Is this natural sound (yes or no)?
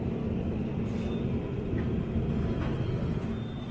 yes